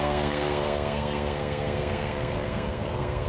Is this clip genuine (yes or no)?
no